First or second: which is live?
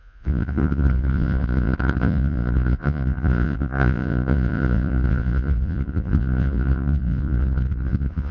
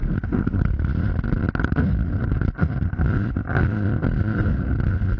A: second